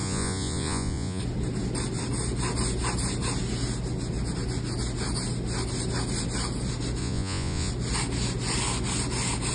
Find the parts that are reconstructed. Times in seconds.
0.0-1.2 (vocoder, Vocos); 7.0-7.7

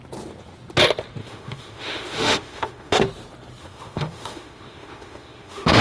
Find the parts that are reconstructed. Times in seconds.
1.2-3.0 (autoencoder, DAC-VAE); 3.6-5.8

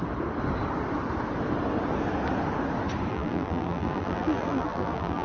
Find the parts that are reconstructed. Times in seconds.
3.1-5.2 (vocoder, BigVGAN v2)

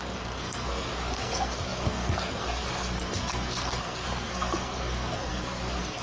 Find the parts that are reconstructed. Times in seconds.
0.0-6.0 (codec, SNAC)

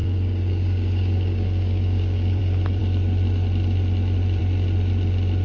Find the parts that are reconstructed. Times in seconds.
0.0-2.4 (codec, DAC)

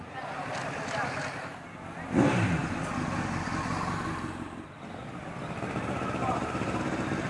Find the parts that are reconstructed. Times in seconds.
6.2-6.8 (vocoder, BigVGAN v2)

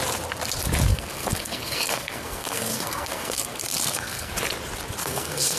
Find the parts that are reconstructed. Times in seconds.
0.9-4.3 (codec, SNAC); 5.0-5.6

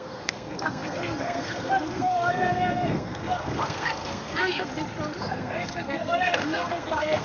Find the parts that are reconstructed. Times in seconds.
0.0-4.7 (codec, SNAC); 5.2-7.2